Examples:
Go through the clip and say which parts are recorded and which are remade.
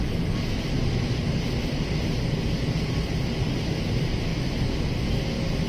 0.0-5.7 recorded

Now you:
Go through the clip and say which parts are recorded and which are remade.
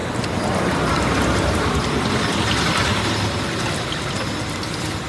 0.0-5.1 recorded